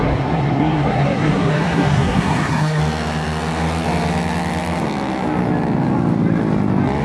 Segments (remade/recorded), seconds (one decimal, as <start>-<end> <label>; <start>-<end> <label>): 0.0-2.8 remade; 2.8-7.0 recorded